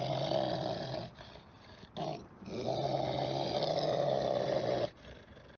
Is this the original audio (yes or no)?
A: yes